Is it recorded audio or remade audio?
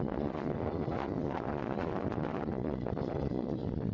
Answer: remade